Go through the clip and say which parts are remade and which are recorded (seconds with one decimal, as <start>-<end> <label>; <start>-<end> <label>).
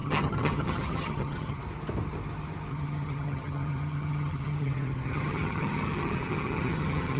0.0-1.6 remade; 1.6-2.7 recorded; 2.7-7.2 remade